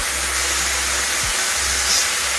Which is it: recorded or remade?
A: recorded